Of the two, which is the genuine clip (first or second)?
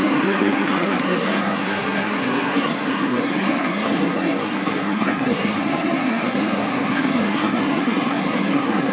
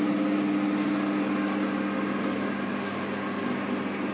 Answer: second